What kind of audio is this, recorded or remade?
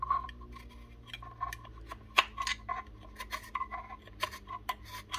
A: recorded